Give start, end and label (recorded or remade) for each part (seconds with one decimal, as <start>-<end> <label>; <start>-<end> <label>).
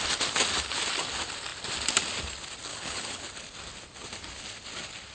0.0-2.7 recorded; 2.7-3.3 remade; 3.3-5.1 recorded